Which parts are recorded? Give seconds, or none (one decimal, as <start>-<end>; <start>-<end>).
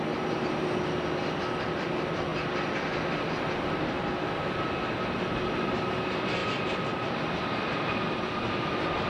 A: 0.0-9.1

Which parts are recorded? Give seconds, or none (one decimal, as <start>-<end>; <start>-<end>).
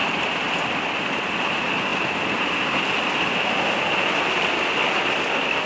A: 0.0-5.7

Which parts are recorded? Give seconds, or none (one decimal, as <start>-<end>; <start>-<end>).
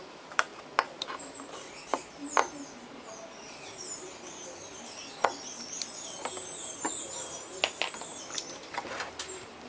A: 0.5-1.0; 2.3-7.0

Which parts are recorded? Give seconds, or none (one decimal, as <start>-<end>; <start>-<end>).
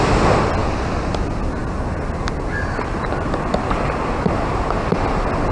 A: 0.0-5.5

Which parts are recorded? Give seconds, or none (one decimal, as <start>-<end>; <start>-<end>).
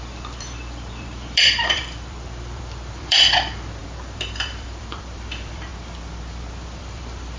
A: 5.7-6.6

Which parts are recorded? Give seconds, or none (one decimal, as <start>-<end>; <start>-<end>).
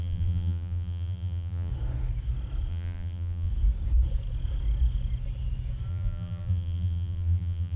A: 1.7-2.7; 3.5-5.9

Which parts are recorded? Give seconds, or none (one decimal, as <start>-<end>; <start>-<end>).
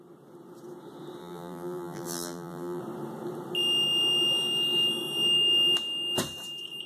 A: 0.0-1.2; 2.8-6.9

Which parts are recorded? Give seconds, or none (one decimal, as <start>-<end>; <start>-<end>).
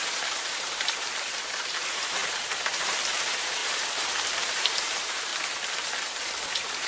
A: 5.3-6.5